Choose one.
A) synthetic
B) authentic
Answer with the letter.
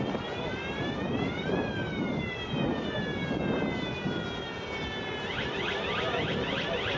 B